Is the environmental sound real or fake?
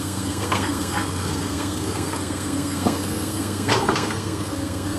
fake